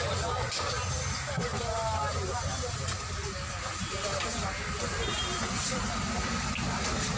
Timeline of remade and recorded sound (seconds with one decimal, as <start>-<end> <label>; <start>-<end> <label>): 0.0-7.2 recorded